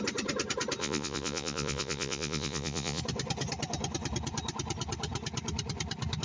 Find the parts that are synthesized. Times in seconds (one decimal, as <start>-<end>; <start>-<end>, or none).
0.8-3.0